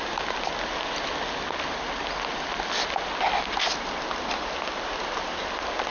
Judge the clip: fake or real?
real